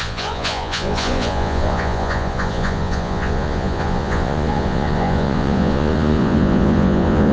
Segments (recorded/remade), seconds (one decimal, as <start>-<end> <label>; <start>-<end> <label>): 0.0-7.3 remade

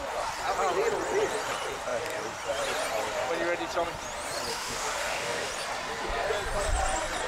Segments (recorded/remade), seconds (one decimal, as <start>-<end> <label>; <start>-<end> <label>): 0.0-4.5 recorded; 4.5-5.5 remade; 5.5-7.3 recorded

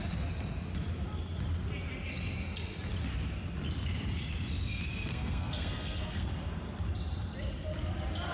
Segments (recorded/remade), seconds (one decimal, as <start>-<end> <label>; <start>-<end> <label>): 0.0-4.7 recorded; 4.7-6.3 remade; 6.3-8.3 recorded

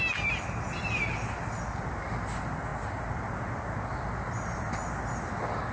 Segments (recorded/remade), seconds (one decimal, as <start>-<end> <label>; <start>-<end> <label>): 0.0-5.7 recorded

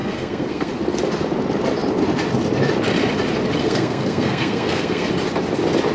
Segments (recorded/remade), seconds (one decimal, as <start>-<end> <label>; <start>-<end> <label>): 0.0-0.7 remade; 0.7-3.6 recorded; 3.6-5.1 remade; 5.1-5.9 recorded

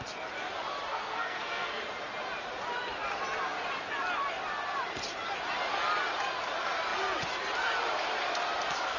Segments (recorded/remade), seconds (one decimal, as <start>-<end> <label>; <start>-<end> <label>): 0.0-0.9 recorded; 0.9-1.8 remade; 1.8-9.0 recorded